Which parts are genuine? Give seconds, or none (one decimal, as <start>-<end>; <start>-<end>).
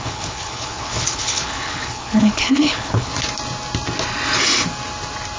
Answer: 3.1-5.4